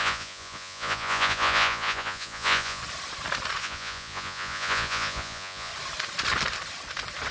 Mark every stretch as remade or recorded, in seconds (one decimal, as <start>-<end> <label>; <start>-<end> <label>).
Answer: 0.0-2.8 remade; 2.8-3.6 recorded; 3.6-5.7 remade; 5.7-7.3 recorded

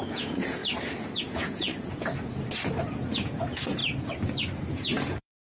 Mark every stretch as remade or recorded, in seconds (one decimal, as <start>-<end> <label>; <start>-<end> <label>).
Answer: 0.0-0.6 remade; 0.6-1.2 recorded; 1.2-2.1 remade; 2.1-2.9 recorded; 2.9-3.8 remade; 3.8-4.7 recorded; 4.7-5.4 remade

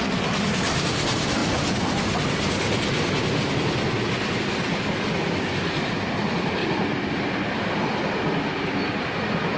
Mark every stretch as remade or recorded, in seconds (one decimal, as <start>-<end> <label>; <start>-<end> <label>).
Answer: 0.0-9.6 recorded

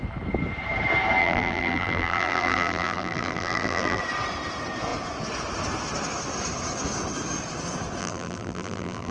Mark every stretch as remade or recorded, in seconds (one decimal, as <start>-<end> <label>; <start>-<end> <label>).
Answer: 0.0-1.2 recorded; 1.2-4.0 remade; 4.0-8.0 recorded; 8.0-9.1 remade